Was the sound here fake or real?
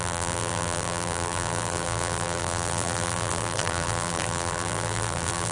fake